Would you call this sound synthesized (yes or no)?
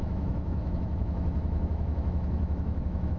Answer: yes